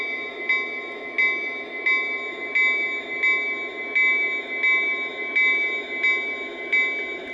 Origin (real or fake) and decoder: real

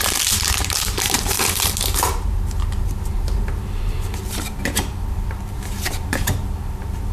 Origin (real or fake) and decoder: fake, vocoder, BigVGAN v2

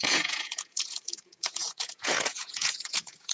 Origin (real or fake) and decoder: fake, vocoder, Vocos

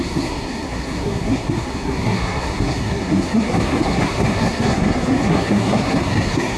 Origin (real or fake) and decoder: fake, codec, SNAC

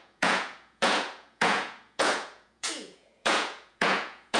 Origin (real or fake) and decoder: fake, vocoder, Vocos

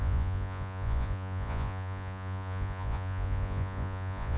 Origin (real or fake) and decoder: fake, vocoder, Vocos